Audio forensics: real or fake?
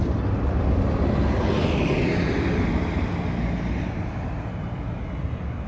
real